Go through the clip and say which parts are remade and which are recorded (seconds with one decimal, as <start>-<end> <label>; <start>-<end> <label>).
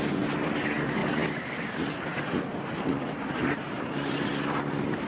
0.0-5.1 recorded